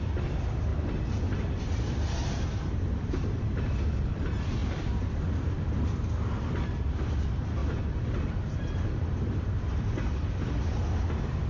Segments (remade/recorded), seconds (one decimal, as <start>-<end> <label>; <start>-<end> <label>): 0.0-0.7 remade; 0.7-1.6 recorded; 1.6-7.6 remade; 7.6-8.9 recorded; 8.9-11.5 remade